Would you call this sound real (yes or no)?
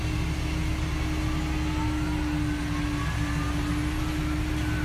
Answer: yes